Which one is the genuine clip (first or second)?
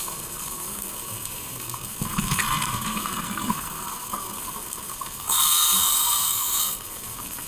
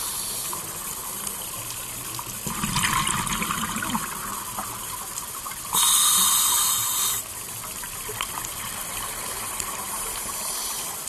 second